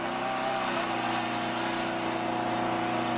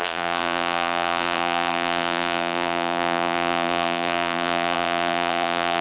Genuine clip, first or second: first